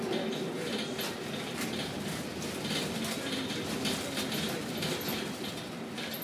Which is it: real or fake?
fake